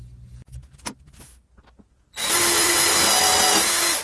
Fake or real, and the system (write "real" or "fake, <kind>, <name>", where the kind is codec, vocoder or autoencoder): real